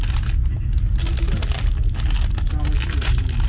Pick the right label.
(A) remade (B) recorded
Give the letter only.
B